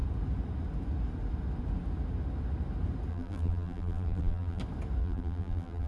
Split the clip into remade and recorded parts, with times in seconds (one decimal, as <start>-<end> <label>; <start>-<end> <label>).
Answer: 0.0-3.1 recorded; 3.1-4.6 remade; 4.6-5.0 recorded; 5.0-5.9 remade